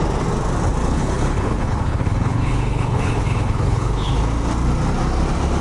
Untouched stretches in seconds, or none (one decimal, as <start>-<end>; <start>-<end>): 0.0-0.8; 4.1-5.6